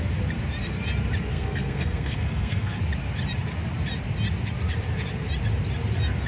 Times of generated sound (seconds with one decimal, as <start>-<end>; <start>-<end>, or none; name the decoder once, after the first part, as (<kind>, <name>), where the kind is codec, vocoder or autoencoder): 1.3-2.8 (codec, SNAC)